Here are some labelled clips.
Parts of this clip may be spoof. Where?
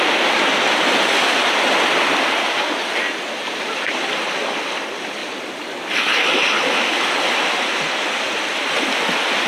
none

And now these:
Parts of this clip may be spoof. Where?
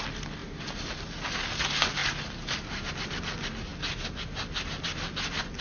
0.4-0.9 (vocoder, BigVGAN v2); 2.0-2.9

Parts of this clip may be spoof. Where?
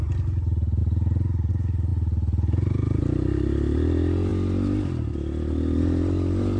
none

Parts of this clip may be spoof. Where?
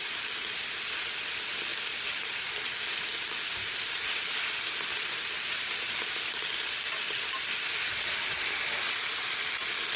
1.7-6.2 (vocoder, BigVGAN v2)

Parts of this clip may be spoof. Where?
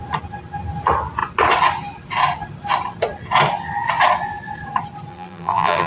5.1-5.9 (vocoder, BigVGAN v2)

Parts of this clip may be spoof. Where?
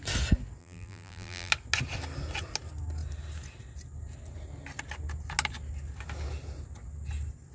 0.6-1.5 (vocoder, BigVGAN v2)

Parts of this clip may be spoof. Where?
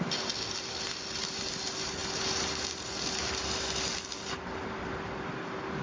0.0-5.8 (vocoder, BigVGAN v2)